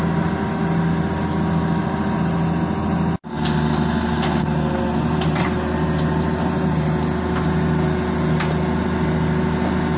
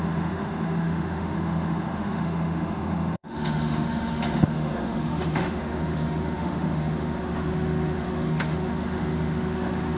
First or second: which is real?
first